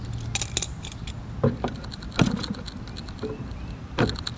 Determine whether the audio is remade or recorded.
recorded